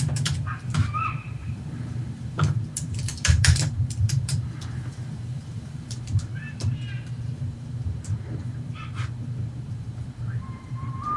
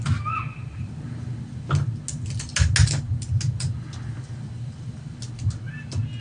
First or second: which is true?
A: second